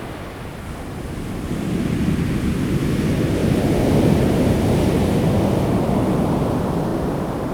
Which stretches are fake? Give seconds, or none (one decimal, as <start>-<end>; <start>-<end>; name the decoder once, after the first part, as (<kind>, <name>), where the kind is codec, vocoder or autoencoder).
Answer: 3.4-4.8 (vocoder, BigVGAN v2); 6.9-7.5